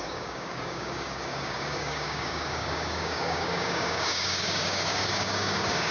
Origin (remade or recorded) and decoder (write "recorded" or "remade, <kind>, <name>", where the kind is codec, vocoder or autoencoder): remade, codec, DAC